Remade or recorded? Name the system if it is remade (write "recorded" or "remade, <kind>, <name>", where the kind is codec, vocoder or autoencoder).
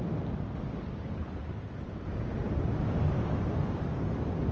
recorded